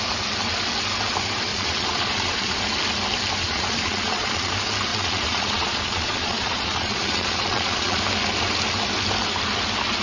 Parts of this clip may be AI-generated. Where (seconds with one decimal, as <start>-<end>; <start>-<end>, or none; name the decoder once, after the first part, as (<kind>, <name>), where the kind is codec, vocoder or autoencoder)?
1.5-2.6 (vocoder, Vocos); 3.4-4.5; 4.9-8.0